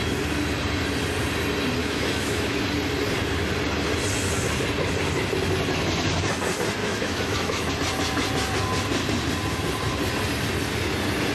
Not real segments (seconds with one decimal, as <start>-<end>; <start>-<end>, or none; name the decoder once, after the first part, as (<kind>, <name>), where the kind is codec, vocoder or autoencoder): 1.8-2.6 (autoencoder, DAC-VAE); 6.8-7.7